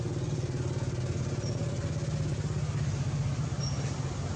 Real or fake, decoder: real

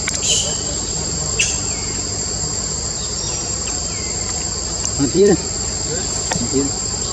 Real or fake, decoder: fake, vocoder, BigVGAN v2